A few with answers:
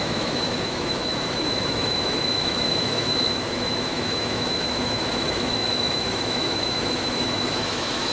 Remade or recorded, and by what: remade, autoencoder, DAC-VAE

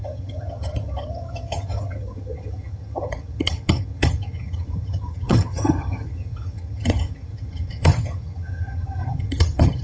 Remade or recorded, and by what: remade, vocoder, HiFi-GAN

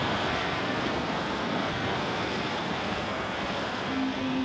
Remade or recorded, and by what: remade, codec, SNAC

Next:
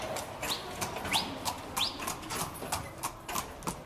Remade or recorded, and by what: recorded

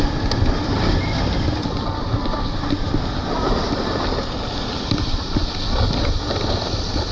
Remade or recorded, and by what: recorded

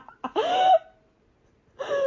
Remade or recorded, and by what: recorded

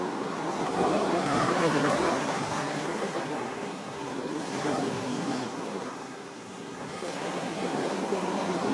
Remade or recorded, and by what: remade, codec, SNAC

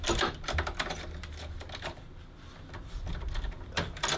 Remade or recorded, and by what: recorded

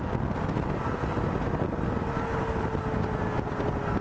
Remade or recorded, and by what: recorded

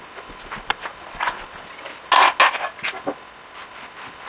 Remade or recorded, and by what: recorded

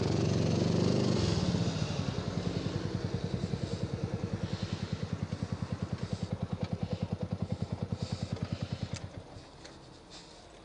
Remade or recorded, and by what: recorded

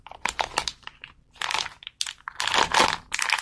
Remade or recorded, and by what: recorded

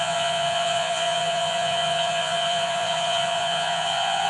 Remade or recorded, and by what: remade, vocoder, Vocos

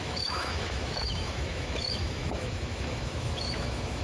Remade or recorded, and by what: remade, autoencoder, DAC-VAE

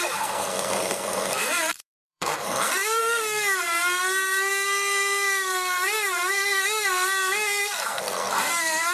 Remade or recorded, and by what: remade, codec, SNAC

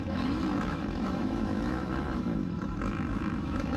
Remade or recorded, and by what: remade, autoencoder, DAC-VAE